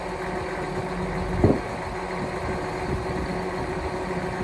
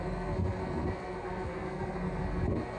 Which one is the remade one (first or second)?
second